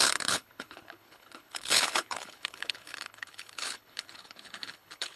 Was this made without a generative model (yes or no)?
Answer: no